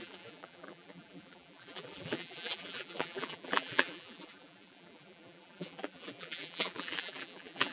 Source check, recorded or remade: remade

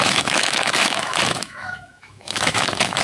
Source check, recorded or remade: remade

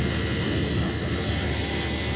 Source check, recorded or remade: recorded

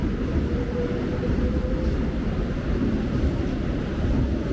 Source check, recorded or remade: recorded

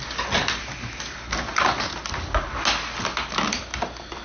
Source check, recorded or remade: recorded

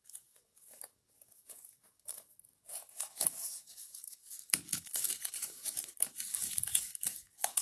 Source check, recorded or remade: remade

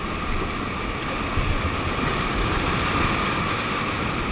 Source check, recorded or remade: recorded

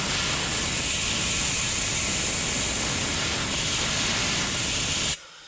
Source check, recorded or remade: recorded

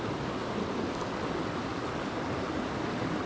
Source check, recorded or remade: recorded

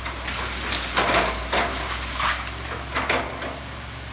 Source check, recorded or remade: recorded